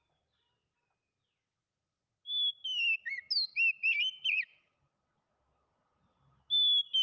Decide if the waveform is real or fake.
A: real